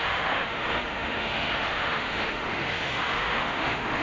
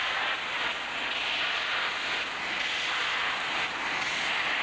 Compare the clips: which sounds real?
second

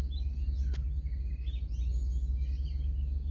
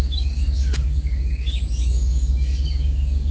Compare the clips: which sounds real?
first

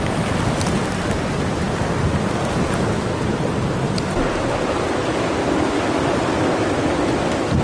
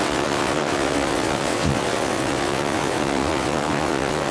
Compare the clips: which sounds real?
first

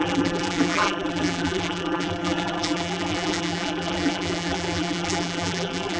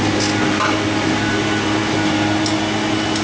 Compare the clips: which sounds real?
second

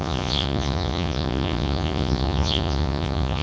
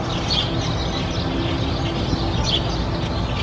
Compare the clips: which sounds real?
second